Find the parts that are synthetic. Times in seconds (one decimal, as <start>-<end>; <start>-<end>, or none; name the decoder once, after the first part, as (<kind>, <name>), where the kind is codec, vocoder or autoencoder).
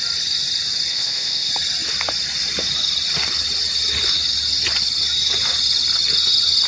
0.9-1.5 (codec, ZipCodec)